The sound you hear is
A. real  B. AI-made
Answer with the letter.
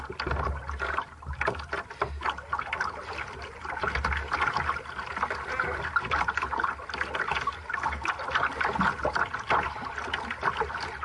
A